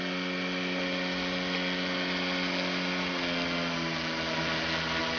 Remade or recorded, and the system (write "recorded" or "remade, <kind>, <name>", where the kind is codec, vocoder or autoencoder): recorded